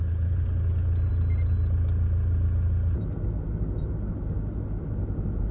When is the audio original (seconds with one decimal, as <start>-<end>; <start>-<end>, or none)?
0.0-5.5